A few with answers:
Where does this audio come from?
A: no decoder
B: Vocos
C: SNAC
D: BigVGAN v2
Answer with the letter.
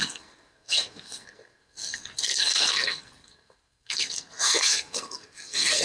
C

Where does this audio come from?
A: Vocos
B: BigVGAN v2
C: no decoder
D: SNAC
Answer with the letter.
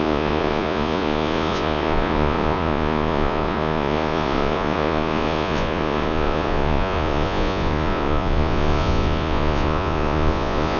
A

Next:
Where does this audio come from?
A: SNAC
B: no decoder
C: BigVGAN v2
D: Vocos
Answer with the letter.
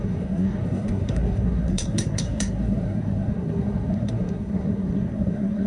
A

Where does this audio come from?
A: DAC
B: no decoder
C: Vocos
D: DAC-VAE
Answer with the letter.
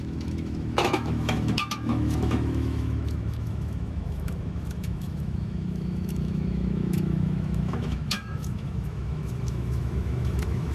D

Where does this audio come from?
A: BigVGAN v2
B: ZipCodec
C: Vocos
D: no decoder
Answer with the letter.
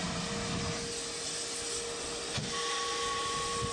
D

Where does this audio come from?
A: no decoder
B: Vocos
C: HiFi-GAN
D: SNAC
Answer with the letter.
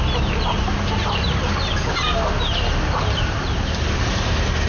A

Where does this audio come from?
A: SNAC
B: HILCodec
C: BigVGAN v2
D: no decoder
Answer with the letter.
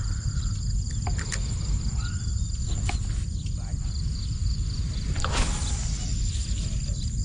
D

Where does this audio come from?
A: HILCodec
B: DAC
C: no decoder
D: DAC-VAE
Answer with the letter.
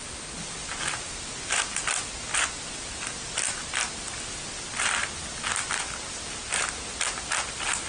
C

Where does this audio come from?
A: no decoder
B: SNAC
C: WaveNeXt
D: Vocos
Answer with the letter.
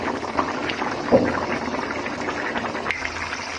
A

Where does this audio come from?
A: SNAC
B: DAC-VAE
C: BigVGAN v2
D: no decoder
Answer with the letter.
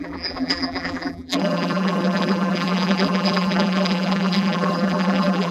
C